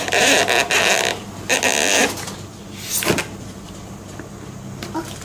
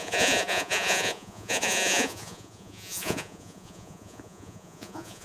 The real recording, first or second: first